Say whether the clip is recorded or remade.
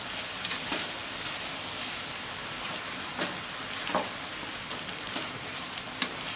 recorded